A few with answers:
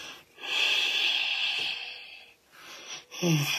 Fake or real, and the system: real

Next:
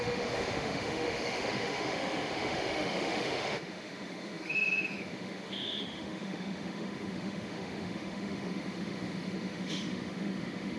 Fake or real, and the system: fake, autoencoder, DAC-VAE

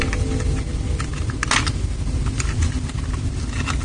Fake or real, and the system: real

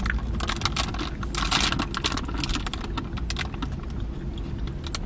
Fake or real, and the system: real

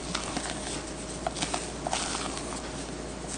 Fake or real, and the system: real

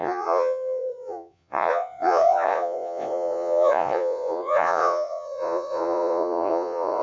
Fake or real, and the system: fake, vocoder, Vocos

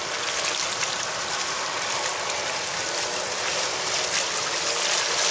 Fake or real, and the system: real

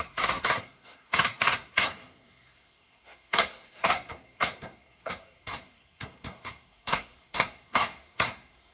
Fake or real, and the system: fake, codec, SNAC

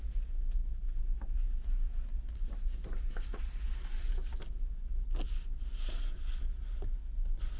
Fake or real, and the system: real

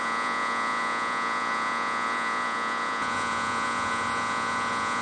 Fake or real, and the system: fake, vocoder, Vocos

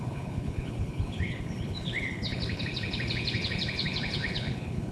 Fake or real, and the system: fake, codec, HILCodec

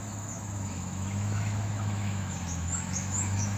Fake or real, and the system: fake, autoencoder, DAC-VAE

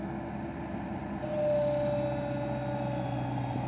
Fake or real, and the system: real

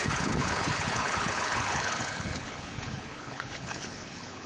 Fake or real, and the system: fake, codec, HILCodec